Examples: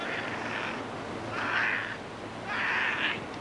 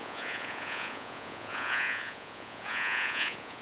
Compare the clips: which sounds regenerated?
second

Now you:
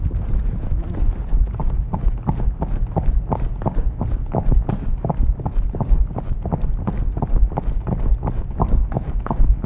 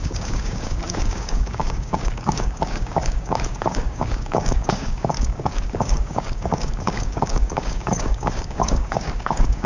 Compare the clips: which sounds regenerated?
second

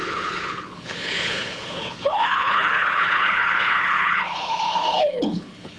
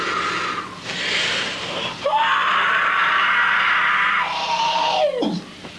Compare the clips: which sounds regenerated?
first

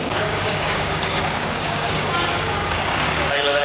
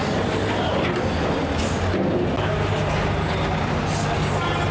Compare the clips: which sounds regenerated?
first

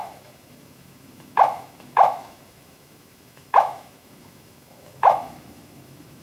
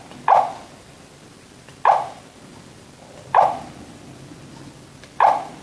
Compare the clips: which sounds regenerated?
first